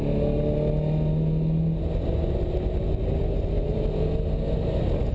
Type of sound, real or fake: real